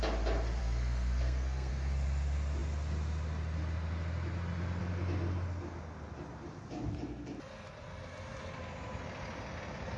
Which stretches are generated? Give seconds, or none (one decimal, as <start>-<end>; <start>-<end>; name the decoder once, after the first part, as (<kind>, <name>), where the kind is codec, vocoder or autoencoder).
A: 0.6-1.7 (codec, SNAC)